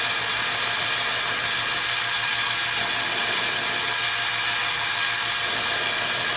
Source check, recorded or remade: recorded